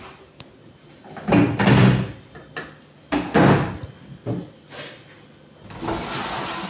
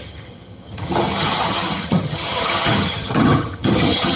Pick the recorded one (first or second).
first